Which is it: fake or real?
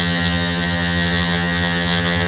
fake